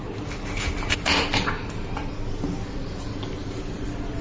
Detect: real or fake real